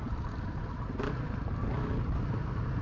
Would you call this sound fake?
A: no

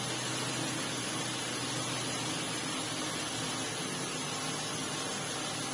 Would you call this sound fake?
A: no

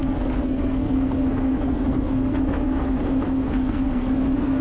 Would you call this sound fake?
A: yes